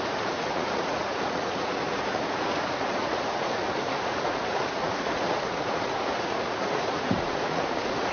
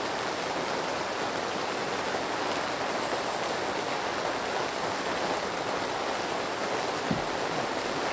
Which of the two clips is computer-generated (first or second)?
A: first